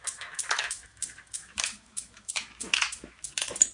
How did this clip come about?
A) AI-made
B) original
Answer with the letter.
A